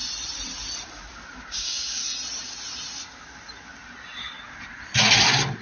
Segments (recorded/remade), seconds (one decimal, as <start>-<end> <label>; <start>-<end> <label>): 0.0-1.4 recorded; 1.4-2.0 remade; 2.0-5.6 recorded